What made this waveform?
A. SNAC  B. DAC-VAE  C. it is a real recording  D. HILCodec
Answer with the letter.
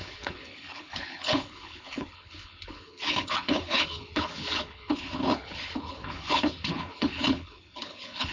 D